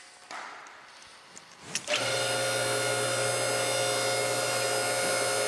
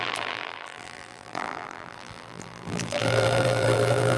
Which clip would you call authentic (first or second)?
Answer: first